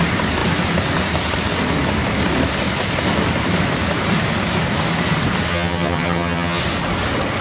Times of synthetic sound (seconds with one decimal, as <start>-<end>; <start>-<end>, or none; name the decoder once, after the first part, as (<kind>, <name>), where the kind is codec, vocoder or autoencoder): 5.5-6.6 (vocoder, HiFi-GAN)